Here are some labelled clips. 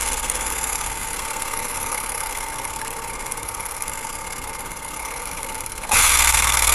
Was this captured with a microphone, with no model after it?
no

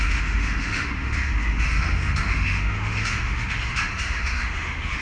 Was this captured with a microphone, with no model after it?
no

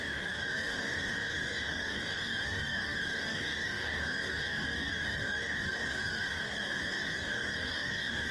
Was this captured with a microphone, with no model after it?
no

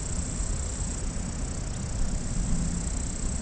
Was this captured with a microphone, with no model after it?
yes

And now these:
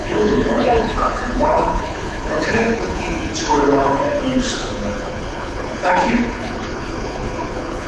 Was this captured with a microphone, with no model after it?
no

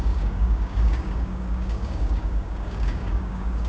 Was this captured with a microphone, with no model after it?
no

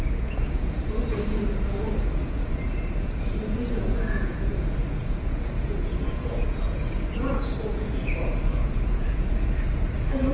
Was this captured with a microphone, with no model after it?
no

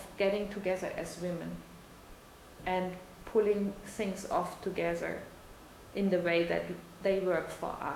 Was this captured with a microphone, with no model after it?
no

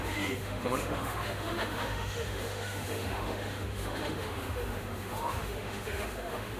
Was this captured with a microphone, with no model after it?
no